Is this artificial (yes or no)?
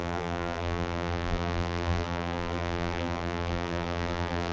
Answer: yes